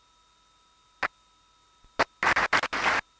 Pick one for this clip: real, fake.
real